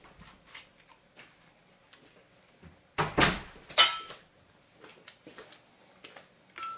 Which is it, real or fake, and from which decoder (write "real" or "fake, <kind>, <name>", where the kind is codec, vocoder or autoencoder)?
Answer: real